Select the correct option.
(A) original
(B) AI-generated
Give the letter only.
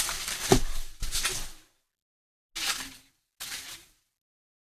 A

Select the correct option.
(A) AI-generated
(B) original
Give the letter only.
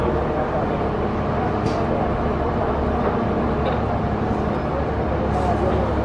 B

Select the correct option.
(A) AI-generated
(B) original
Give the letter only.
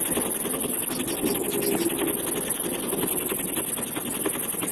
B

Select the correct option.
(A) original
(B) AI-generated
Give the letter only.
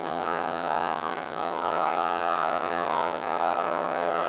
B